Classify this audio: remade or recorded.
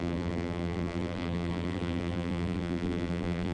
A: remade